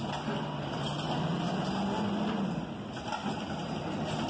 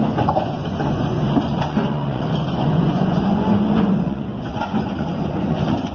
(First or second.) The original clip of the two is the first